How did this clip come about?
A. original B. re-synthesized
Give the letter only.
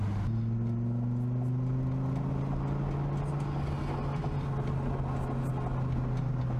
A